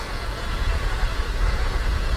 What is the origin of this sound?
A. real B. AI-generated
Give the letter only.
B